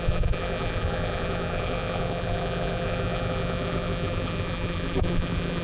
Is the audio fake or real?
fake